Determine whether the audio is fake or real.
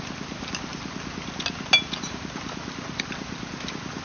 real